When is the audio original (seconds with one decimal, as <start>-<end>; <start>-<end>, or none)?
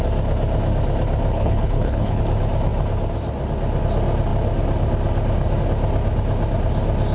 0.0-1.3; 2.2-7.1